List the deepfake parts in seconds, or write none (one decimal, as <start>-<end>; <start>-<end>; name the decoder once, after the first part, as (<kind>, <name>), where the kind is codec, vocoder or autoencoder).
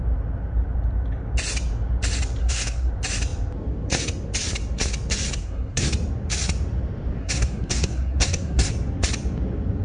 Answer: 2.4-2.9 (codec, SNAC); 5.4-5.9; 7.2-8.7